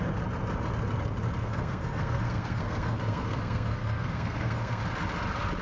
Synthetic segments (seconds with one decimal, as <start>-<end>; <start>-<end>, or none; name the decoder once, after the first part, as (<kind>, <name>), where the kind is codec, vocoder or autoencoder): 1.4-4.8 (codec, SNAC)